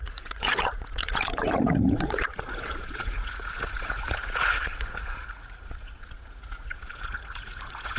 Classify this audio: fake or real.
fake